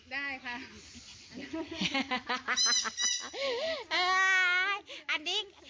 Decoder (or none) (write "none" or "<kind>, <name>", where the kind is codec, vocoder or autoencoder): none